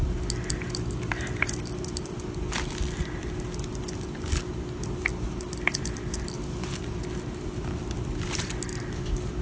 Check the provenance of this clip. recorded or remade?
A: recorded